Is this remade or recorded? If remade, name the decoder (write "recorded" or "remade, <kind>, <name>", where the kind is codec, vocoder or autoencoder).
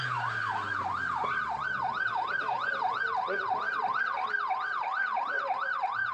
recorded